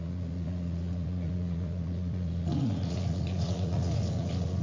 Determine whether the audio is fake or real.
fake